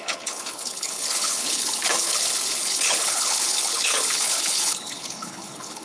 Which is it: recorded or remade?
remade